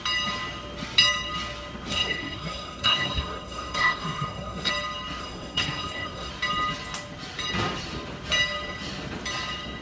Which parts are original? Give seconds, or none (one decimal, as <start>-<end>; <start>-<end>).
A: 0.0-1.9; 4.7-5.2; 6.3-9.8